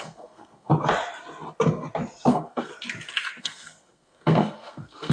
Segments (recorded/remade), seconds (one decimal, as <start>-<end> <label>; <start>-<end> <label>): 0.0-0.7 remade; 0.7-2.3 recorded; 2.3-2.7 remade; 2.7-3.4 recorded; 3.4-5.1 remade